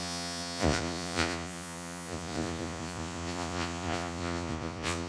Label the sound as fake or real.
fake